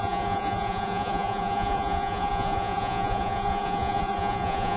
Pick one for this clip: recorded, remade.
remade